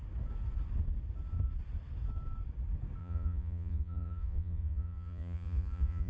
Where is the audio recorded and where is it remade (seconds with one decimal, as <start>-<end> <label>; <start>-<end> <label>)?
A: 0.0-3.0 recorded; 3.0-6.1 remade

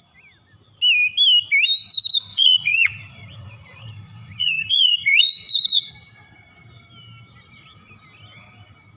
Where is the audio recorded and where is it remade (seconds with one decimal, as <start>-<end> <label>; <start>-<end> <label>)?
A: 0.0-2.3 recorded; 2.3-5.9 remade; 5.9-9.0 recorded

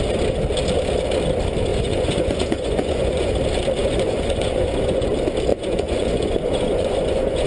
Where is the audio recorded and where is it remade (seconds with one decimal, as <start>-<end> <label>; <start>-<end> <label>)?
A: 0.0-1.7 recorded; 1.7-3.3 remade; 3.3-3.8 recorded; 3.8-5.1 remade; 5.1-5.5 recorded; 5.5-7.5 remade

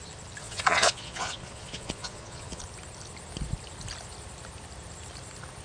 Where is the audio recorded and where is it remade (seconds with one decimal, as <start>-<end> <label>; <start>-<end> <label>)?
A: 0.0-0.4 recorded; 0.4-2.6 remade; 2.6-5.6 recorded

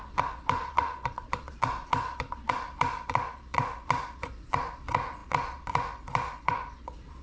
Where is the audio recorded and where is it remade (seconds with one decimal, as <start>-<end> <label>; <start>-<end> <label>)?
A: 0.0-7.2 remade

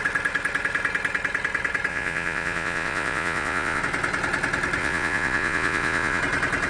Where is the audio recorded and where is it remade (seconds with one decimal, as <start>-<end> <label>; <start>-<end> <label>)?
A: 0.0-1.9 recorded; 1.9-3.8 remade; 3.8-4.8 recorded; 4.8-6.2 remade; 6.2-6.7 recorded

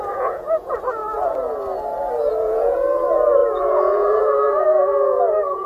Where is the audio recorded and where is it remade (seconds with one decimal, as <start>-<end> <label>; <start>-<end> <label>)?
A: 0.0-1.0 remade; 1.0-2.3 recorded; 2.3-5.7 remade